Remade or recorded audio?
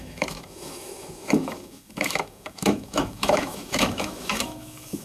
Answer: remade